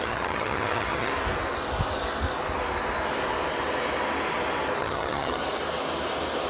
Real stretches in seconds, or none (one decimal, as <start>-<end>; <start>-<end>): 1.1-4.8; 5.4-6.5